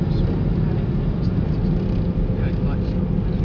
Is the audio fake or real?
real